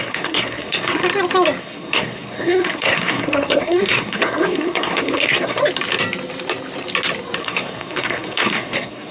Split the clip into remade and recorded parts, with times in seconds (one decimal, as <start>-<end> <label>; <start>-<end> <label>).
0.0-1.0 remade; 1.0-1.6 recorded; 1.6-5.6 remade; 5.6-7.4 recorded; 7.4-9.1 remade